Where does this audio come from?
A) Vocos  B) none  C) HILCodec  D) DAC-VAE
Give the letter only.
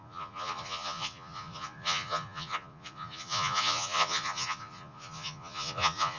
A